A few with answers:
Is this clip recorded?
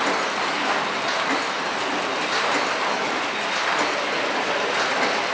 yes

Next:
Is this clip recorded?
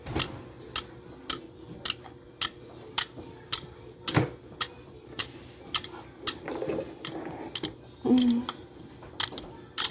yes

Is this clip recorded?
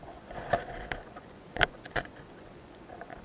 no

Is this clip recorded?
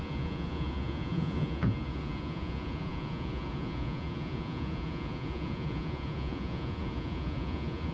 no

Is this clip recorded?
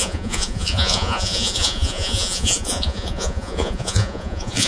no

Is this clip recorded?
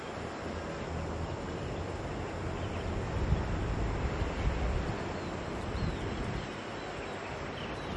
yes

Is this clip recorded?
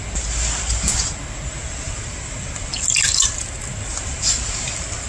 yes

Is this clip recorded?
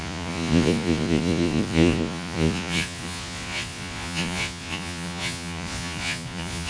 no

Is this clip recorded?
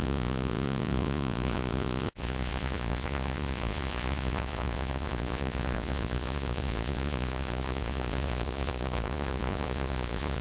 no